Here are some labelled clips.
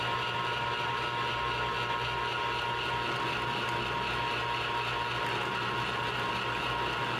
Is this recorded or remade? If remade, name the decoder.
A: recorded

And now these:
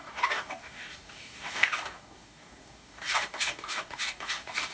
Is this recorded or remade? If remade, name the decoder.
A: remade, codec, DAC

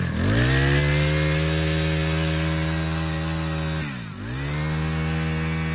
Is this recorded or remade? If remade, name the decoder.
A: recorded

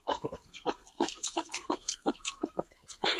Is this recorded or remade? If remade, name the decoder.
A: remade, codec, SNAC